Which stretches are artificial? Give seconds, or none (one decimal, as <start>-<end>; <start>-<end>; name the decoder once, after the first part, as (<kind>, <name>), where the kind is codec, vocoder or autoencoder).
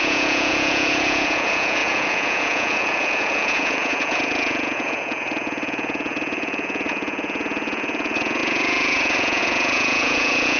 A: 0.0-10.6 (vocoder, Vocos)